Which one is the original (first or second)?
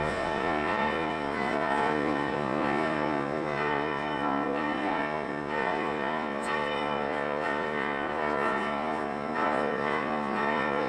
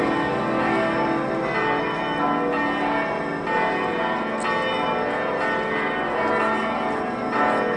second